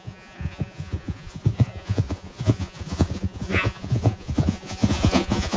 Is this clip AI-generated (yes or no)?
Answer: yes